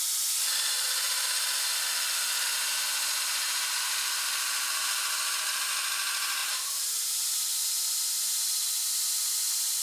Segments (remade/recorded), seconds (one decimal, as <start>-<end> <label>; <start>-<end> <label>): 0.0-6.4 recorded; 6.4-7.6 remade; 7.6-9.8 recorded